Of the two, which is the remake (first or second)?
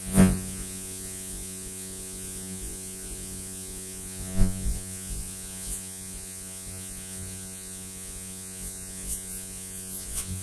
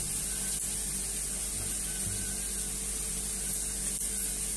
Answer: first